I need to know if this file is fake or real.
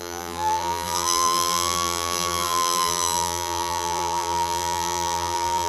fake